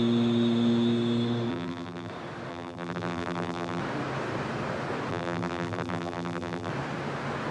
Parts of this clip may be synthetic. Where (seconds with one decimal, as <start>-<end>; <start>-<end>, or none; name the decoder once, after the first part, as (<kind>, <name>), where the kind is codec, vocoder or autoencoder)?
1.5-2.1 (vocoder, BigVGAN v2); 2.5-3.8; 5.1-6.7